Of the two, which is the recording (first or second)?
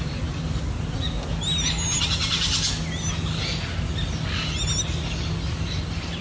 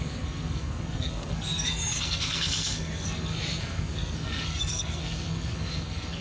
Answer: first